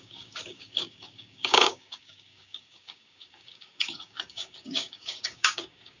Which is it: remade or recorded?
remade